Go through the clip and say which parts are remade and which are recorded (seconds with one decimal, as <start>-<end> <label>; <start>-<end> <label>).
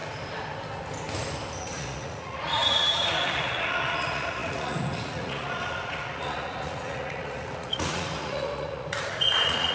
0.0-1.6 recorded; 1.6-9.7 remade